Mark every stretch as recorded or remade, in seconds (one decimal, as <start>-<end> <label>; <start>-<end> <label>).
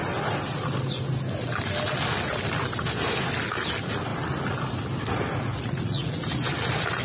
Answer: 0.0-5.5 recorded; 5.5-6.1 remade; 6.1-7.0 recorded